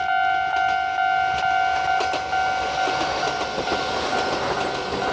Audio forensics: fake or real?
real